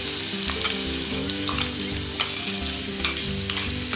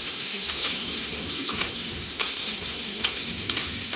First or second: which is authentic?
first